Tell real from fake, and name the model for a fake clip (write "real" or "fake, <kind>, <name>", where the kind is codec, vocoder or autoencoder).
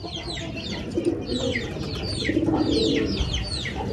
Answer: real